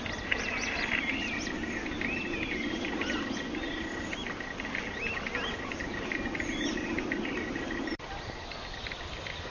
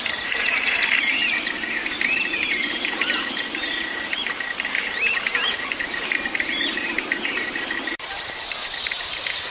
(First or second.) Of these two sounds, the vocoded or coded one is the second